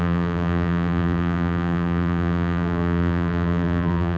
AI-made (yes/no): yes